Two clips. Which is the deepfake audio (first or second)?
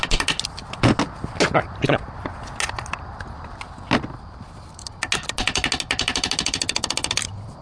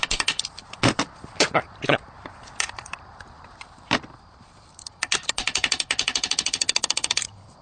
second